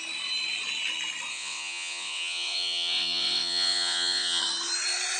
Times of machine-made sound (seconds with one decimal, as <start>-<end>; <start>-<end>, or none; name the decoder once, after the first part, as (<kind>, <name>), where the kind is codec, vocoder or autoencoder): 1.3-4.4 (vocoder, WaveNeXt)